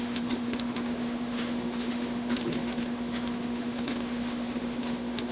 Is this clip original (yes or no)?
no